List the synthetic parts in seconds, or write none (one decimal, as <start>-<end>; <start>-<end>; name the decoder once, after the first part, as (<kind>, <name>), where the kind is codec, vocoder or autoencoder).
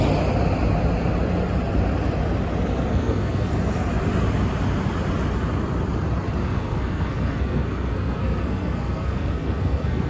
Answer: 2.9-3.5 (codec, SNAC); 6.4-10.1